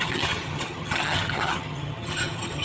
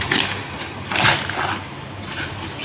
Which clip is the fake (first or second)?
first